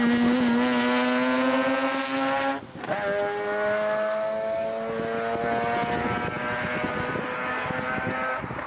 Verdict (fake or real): real